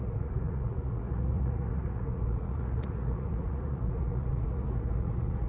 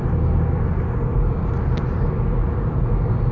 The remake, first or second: first